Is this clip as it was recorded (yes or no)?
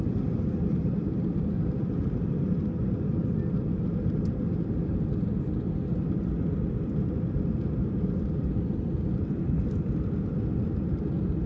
yes